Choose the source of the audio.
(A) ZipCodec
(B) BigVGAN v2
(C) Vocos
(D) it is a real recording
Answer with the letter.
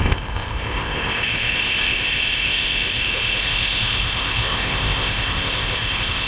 A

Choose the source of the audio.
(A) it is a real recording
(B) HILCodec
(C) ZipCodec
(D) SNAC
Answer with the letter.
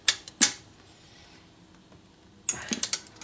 A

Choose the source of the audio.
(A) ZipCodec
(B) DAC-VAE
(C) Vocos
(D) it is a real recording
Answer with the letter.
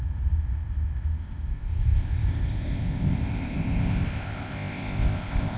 A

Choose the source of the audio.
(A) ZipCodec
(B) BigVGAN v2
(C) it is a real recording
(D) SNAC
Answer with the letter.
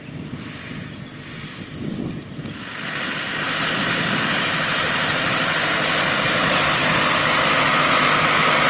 C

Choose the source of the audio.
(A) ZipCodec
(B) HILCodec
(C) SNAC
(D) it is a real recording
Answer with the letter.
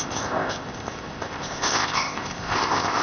A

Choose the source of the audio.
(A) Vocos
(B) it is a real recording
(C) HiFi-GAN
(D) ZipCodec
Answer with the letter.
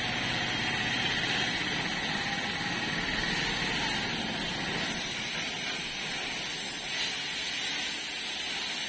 B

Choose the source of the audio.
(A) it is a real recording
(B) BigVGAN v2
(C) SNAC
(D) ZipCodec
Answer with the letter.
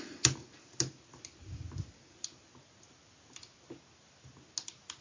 A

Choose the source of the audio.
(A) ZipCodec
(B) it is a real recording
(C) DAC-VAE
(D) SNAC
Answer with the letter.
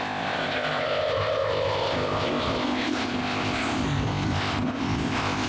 A